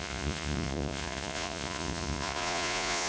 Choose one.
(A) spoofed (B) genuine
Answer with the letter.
A